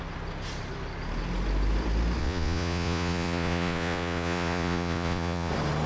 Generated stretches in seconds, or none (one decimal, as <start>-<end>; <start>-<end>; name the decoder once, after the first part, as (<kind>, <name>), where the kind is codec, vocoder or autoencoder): 2.2-5.5 (vocoder, Vocos)